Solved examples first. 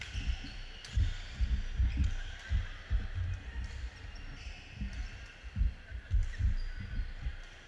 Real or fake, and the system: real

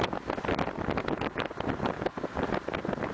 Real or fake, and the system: real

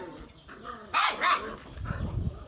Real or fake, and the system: real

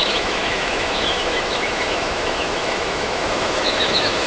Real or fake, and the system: fake, autoencoder, DAC-VAE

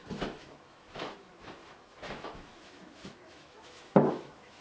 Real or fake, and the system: fake, autoencoder, DAC-VAE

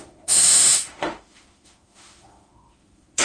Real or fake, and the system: fake, autoencoder, DAC-VAE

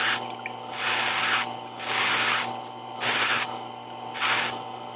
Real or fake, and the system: real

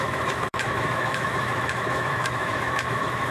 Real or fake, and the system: fake, autoencoder, DAC-VAE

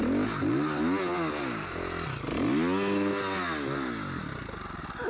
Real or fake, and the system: real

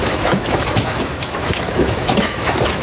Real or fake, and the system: fake, autoencoder, DAC-VAE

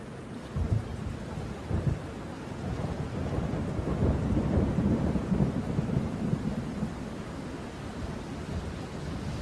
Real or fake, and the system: real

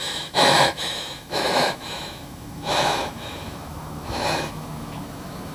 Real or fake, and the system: fake, autoencoder, DAC-VAE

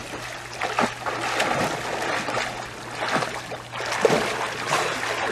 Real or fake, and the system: real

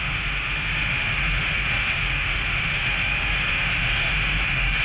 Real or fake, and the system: fake, autoencoder, DAC-VAE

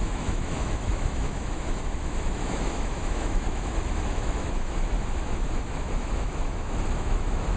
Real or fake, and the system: fake, autoencoder, DAC-VAE